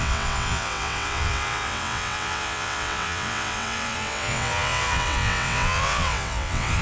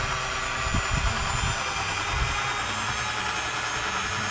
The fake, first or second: first